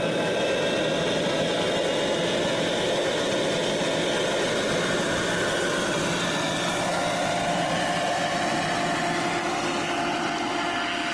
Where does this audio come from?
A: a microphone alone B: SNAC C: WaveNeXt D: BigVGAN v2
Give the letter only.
A